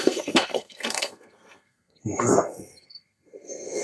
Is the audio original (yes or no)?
no